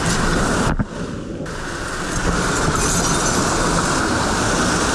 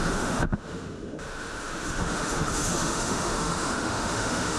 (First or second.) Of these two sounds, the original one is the first